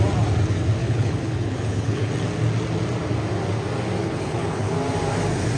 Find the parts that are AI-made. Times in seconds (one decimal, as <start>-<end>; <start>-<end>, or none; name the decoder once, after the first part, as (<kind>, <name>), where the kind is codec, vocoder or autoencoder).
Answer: 0.8-2.1 (codec, HILCodec); 4.0-4.7